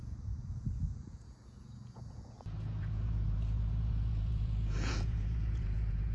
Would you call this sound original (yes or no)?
no